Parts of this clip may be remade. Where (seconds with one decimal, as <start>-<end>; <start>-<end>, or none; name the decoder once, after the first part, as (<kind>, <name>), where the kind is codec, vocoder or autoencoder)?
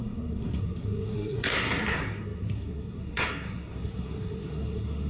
0.0-5.1 (codec, SNAC)